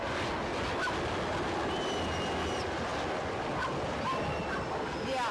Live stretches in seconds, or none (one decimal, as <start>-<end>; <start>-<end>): 0.0-5.3